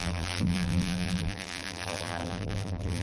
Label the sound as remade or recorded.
remade